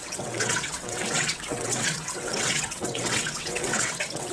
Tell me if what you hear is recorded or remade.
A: remade